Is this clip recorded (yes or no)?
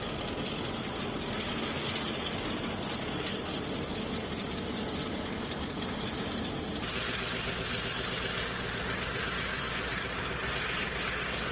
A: yes